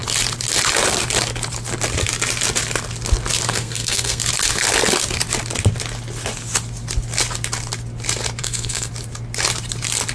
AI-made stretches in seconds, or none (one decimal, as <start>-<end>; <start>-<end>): 3.5-4.2; 8.4-8.9